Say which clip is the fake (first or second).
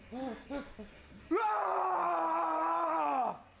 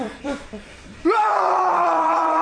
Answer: second